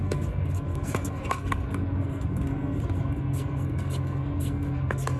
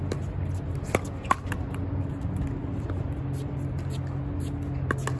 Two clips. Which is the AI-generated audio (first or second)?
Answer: first